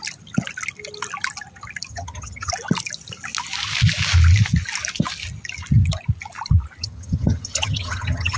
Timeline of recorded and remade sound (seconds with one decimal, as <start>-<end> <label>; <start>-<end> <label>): 0.0-1.9 recorded; 1.9-2.5 remade; 2.5-6.8 recorded; 6.8-8.4 remade